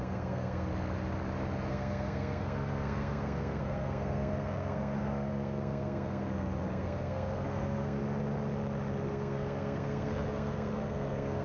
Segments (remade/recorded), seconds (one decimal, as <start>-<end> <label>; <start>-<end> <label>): 0.0-0.7 remade; 0.7-1.7 recorded; 1.7-8.0 remade; 8.0-9.1 recorded; 9.1-11.4 remade